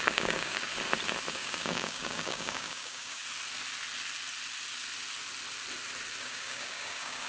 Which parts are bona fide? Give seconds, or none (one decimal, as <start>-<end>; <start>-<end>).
0.7-1.3; 3.2-6.2